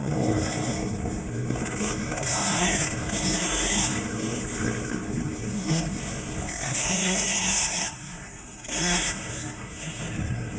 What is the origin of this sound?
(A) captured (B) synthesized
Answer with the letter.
B